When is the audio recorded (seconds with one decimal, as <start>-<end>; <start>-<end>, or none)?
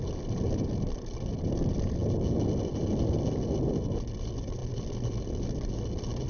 0.0-6.3